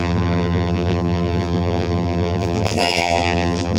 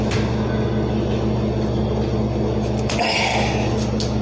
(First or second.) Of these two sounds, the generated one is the first